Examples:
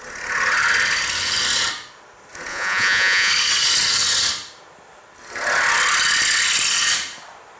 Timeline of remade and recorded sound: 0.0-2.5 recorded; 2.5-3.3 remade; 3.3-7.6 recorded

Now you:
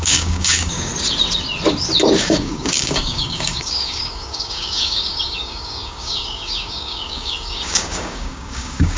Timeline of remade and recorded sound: 0.0-0.9 remade; 0.9-2.2 recorded; 2.2-9.0 remade

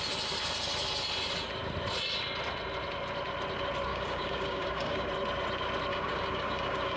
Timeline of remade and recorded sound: 0.0-3.9 recorded; 3.9-5.1 remade; 5.1-5.9 recorded; 5.9-7.0 remade

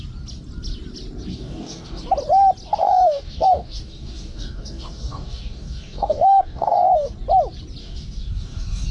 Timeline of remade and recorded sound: 0.0-1.3 recorded; 1.3-2.0 remade; 2.0-2.8 recorded; 2.8-7.1 remade; 7.1-7.8 recorded; 7.8-8.9 remade

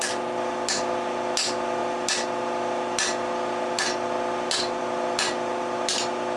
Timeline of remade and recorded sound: 0.0-6.4 recorded

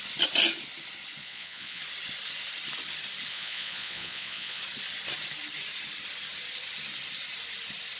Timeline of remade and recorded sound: 0.0-1.2 recorded; 1.2-1.8 remade; 1.8-3.3 recorded; 3.3-4.6 remade; 4.6-8.0 recorded